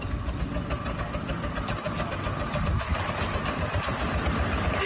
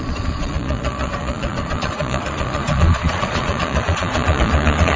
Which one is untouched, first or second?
first